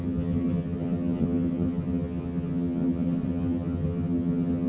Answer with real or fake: fake